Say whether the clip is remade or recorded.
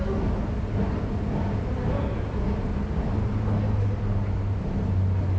recorded